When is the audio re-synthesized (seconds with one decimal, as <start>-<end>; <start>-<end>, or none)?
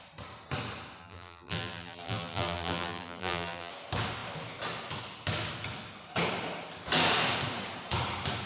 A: 1.0-3.7